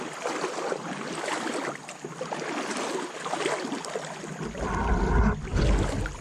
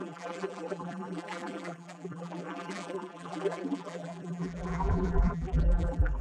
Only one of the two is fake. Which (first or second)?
second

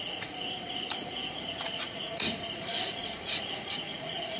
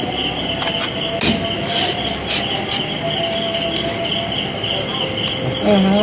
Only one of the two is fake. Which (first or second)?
first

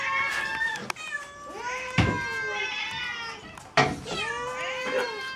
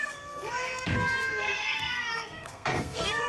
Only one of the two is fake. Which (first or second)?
second